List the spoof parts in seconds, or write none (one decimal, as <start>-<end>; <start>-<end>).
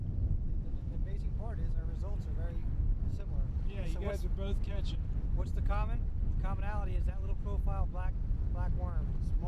0.7-1.2